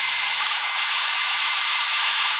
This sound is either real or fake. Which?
fake